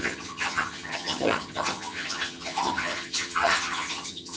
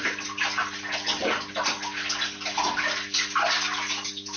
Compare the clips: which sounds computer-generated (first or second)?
first